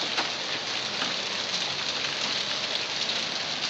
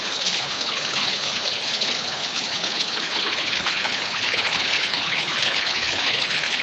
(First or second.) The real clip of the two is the first